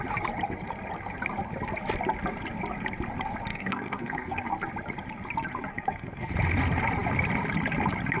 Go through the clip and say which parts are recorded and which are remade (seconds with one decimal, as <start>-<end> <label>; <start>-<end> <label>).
0.0-3.5 recorded; 3.5-4.5 remade; 4.5-5.7 recorded; 5.7-6.3 remade; 6.3-8.2 recorded

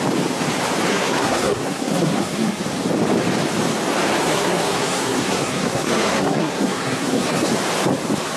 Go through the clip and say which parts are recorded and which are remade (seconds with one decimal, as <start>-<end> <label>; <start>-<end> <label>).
0.0-0.9 recorded; 0.9-2.6 remade; 2.6-4.2 recorded; 4.2-7.5 remade; 7.5-8.4 recorded

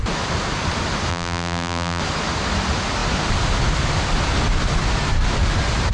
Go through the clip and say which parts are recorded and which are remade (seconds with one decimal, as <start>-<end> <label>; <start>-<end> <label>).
0.0-1.1 recorded; 1.1-2.0 remade; 2.0-5.9 recorded

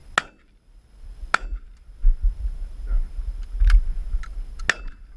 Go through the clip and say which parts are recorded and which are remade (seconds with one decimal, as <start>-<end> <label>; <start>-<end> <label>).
0.0-5.2 recorded

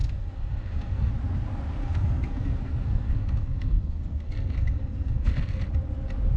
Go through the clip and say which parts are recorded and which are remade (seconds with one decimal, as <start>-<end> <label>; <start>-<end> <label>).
0.0-1.1 remade; 1.1-1.8 recorded; 1.8-5.6 remade; 5.6-6.4 recorded

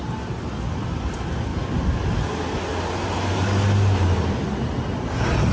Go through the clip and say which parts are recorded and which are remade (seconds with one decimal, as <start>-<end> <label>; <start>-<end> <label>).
0.0-5.5 recorded